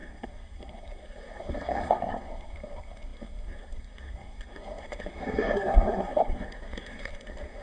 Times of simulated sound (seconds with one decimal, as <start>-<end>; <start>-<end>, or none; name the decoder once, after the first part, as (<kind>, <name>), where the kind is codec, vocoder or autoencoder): 0.0-7.6 (codec, SNAC)